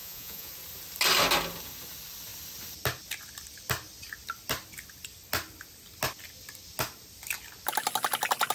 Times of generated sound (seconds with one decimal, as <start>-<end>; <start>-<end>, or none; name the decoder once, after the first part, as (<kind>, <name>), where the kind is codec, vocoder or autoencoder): 0.0-0.5 (vocoder, Vocos)